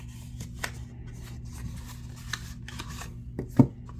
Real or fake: real